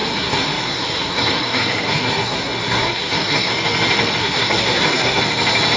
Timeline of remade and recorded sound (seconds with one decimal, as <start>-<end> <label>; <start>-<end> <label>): 0.0-3.5 remade; 3.5-4.2 recorded; 4.2-5.2 remade; 5.2-5.8 recorded